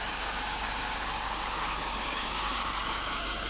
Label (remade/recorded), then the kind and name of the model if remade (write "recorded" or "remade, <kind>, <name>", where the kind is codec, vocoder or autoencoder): remade, codec, DAC